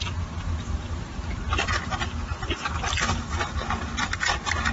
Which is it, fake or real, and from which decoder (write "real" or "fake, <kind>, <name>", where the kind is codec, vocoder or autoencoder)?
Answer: real